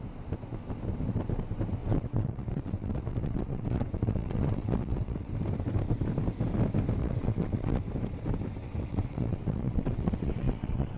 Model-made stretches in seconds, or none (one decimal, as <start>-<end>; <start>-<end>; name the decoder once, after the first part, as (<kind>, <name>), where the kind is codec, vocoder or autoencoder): 1.8-5.3 (vocoder, WaveNeXt); 7.0-7.8; 8.6-11.0